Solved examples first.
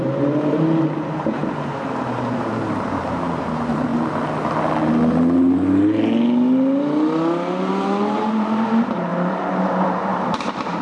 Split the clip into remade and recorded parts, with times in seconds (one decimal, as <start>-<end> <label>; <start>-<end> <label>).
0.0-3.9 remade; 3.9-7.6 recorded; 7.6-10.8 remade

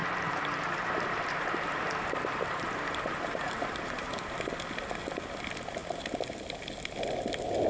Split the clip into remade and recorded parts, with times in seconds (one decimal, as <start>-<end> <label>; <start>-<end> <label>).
0.0-4.5 remade; 4.5-7.7 recorded

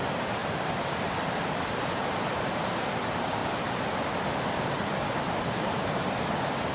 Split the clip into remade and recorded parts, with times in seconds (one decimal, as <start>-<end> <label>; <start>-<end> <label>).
0.0-0.4 remade; 0.4-1.2 recorded; 1.2-3.4 remade; 3.4-5.2 recorded; 5.2-6.7 remade

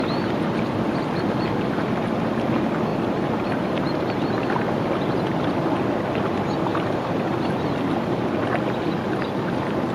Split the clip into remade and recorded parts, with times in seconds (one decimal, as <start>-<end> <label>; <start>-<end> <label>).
0.0-2.9 recorded; 2.9-4.2 remade; 4.2-6.7 recorded; 6.7-7.3 remade; 7.3-9.9 recorded